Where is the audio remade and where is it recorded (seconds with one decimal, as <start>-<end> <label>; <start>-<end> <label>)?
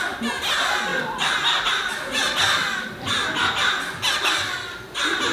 0.0-5.3 recorded